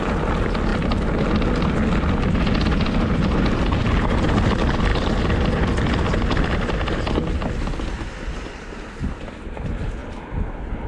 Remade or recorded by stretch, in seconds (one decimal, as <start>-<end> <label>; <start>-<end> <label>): 0.0-10.9 recorded